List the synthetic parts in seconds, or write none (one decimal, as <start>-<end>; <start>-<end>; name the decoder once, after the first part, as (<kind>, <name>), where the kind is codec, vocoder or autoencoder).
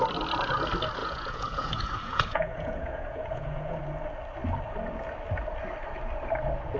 1.0-3.8 (vocoder, Vocos)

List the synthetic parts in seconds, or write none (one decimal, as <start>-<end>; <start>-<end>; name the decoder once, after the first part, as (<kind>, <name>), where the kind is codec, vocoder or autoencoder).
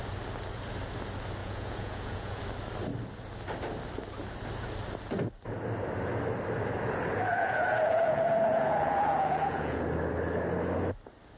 1.4-2.4 (vocoder, Vocos); 7.3-9.8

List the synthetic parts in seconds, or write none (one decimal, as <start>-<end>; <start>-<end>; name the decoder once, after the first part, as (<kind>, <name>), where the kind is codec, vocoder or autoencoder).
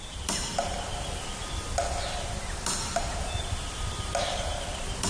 none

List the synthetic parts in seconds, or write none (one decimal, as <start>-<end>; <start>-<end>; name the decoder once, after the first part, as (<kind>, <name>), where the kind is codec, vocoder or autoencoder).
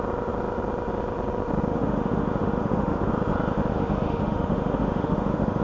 1.7-3.1 (autoencoder, DAC-VAE); 3.7-5.6